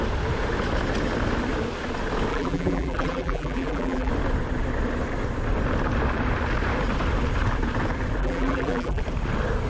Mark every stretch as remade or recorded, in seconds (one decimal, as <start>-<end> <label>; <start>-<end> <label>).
0.0-2.3 recorded; 2.3-4.1 remade; 4.1-8.2 recorded; 8.2-9.0 remade; 9.0-9.7 recorded